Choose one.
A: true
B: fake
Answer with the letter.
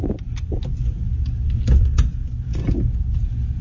A